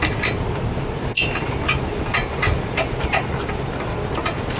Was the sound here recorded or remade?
recorded